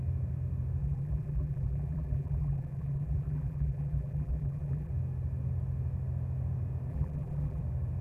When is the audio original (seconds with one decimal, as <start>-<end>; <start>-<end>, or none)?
0.0-0.8; 4.9-6.9; 7.6-8.0

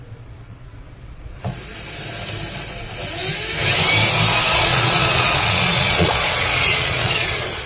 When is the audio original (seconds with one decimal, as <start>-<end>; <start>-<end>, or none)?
1.5-4.5

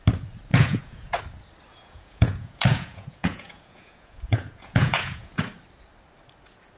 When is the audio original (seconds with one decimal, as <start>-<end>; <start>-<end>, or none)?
0.0-0.5; 1.2-1.7; 5.4-6.8

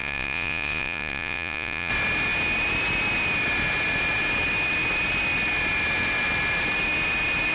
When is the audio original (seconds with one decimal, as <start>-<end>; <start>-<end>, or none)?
1.9-7.5

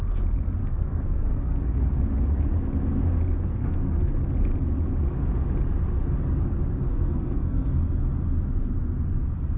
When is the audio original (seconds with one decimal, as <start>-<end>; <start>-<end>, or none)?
0.0-0.6; 2.0-3.6; 4.1-6.9; 7.7-9.6

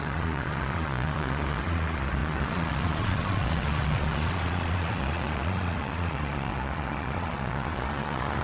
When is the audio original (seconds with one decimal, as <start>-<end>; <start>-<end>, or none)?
none

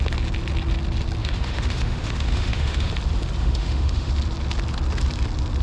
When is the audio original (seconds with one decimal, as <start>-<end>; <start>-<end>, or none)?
0.0-1.2; 2.9-3.4; 4.1-5.6